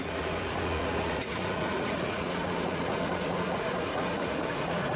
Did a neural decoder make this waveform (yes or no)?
yes